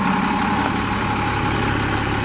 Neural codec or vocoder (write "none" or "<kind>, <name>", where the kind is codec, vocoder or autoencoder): none